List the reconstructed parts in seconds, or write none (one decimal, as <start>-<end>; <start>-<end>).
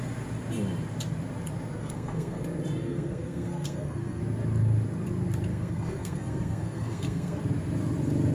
1.8-2.4; 2.8-4.2; 5.5-7.4